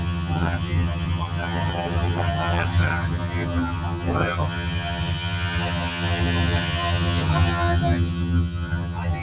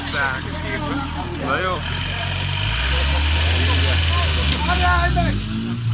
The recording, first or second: second